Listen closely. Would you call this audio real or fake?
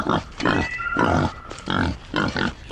real